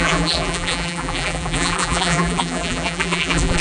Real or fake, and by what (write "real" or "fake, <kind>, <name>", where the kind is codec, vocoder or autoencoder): fake, vocoder, BigVGAN v2